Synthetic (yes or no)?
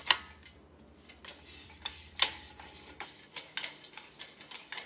no